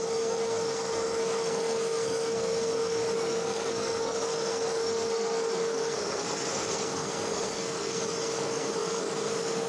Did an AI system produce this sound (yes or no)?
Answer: yes